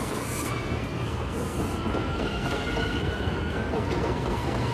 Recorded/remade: remade